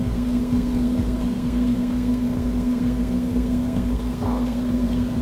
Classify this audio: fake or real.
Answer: fake